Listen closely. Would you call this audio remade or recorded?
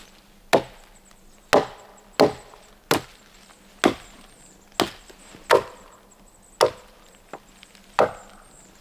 recorded